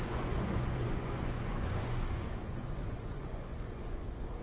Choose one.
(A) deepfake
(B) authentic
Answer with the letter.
A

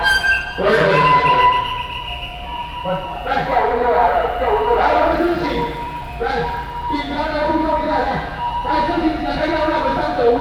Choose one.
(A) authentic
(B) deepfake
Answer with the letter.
B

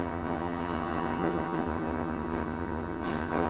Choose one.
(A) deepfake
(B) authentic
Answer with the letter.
A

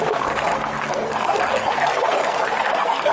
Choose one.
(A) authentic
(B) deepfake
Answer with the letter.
B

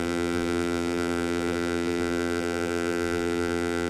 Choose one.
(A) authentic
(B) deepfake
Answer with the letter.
B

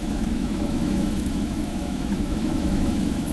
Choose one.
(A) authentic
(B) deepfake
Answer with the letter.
B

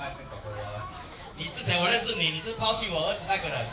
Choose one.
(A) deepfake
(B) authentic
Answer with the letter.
A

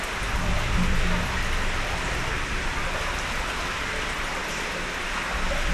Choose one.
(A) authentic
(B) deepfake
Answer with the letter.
A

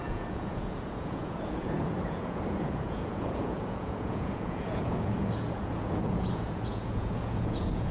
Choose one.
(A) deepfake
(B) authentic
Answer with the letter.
A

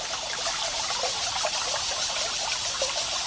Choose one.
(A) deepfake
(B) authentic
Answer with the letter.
B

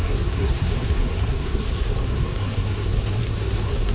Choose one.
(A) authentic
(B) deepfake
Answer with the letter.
B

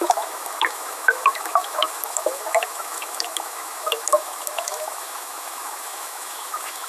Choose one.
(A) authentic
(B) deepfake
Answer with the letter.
B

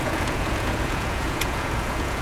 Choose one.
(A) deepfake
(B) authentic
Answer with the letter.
A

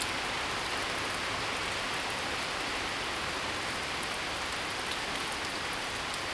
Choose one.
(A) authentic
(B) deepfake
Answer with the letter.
B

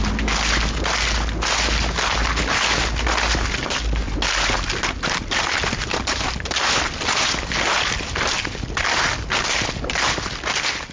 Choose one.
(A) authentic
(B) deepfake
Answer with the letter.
A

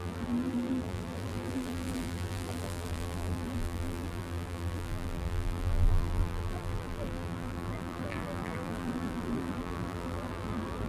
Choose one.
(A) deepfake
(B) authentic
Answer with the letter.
A